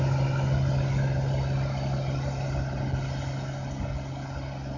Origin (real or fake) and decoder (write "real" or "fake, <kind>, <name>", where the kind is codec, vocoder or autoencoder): real